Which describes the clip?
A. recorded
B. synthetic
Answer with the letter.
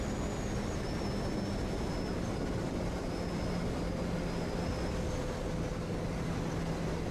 A